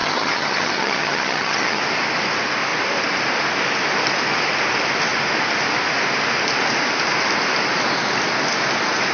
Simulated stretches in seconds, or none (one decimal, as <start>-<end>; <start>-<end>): 0.0-1.8